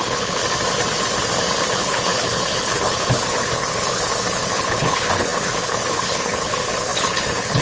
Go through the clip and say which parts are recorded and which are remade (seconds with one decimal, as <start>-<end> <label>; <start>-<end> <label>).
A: 0.0-0.4 remade; 0.4-1.7 recorded; 1.7-7.6 remade